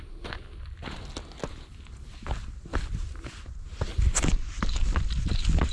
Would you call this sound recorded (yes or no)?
yes